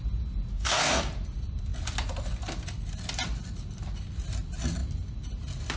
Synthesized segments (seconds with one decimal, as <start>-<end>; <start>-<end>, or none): 0.5-1.1